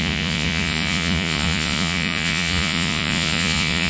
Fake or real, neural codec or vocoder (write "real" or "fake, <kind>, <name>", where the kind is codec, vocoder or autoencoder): fake, vocoder, Vocos